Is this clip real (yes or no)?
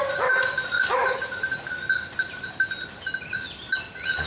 yes